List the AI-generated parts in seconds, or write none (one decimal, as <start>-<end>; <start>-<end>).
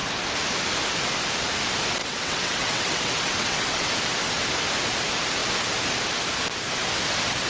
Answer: 2.0-3.9